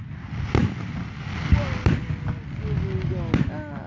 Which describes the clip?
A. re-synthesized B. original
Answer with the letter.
B